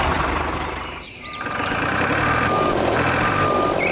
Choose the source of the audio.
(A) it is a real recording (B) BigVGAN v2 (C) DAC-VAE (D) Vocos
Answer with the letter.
B